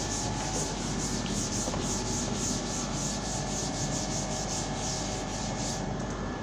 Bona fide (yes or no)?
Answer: no